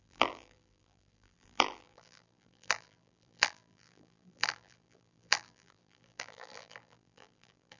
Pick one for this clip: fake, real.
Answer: fake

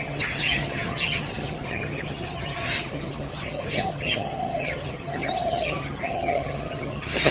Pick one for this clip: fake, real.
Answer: fake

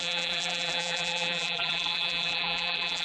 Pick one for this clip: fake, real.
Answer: fake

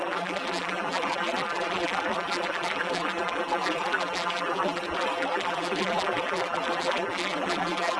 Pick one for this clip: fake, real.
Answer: fake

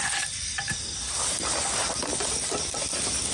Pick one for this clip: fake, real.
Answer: real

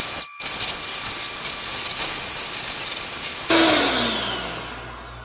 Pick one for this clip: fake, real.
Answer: real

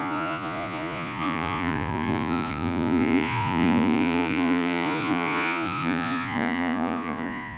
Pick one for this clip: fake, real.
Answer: fake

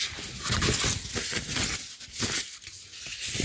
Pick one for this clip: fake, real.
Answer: real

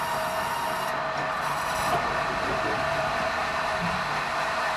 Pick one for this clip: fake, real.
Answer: real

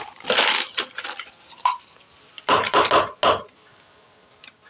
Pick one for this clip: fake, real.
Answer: real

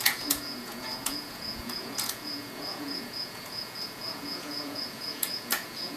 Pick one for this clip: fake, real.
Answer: fake